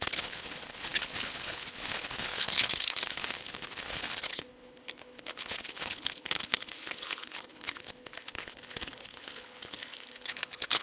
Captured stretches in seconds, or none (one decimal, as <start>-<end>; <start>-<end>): none